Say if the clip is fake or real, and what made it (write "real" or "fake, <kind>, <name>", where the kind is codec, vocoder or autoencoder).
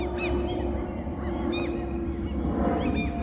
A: real